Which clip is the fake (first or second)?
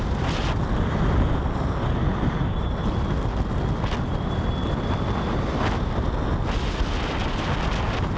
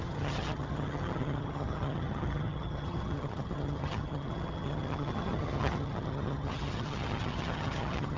second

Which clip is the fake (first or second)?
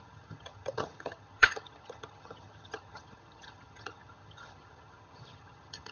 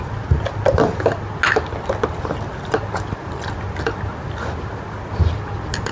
first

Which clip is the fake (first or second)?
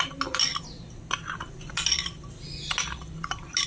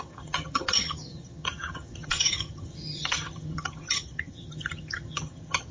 second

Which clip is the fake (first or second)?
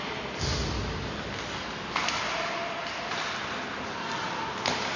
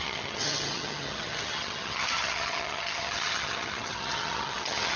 second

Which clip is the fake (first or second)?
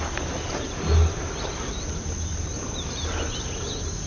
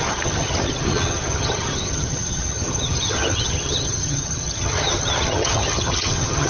second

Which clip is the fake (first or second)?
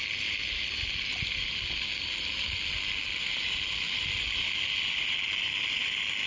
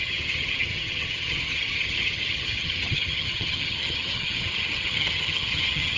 second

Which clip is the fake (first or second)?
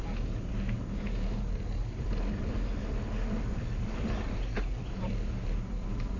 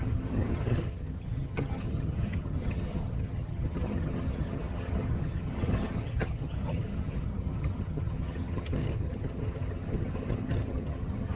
second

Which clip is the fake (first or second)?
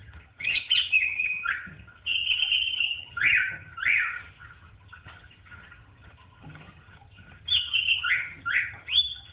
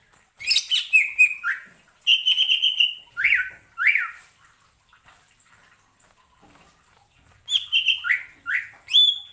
first